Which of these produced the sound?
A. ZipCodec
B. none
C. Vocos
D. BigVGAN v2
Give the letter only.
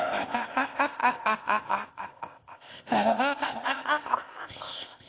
A